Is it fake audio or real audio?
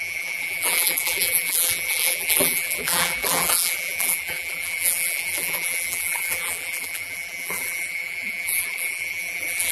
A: fake